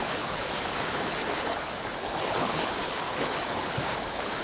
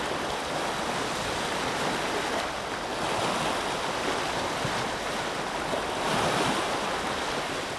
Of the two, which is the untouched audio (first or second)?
second